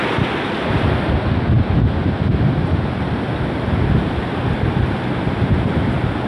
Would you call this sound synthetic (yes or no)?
no